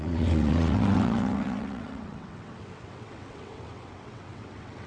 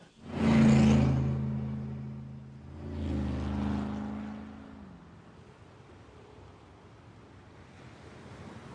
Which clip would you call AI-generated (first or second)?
first